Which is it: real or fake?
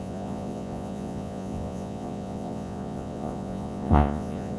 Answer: fake